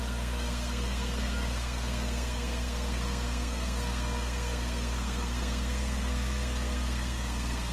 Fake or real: fake